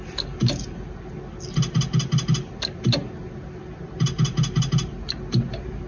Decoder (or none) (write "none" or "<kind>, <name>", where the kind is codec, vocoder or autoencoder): none